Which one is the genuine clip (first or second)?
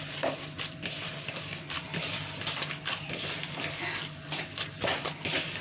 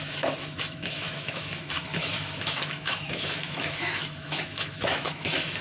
first